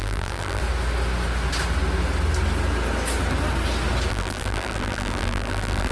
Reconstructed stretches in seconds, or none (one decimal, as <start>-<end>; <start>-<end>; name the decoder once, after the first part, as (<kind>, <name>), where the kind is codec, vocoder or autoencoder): 0.0-0.6 (vocoder, BigVGAN v2); 4.1-5.9